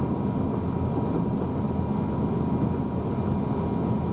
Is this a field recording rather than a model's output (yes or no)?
yes